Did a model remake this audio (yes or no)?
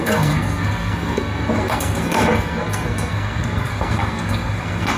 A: yes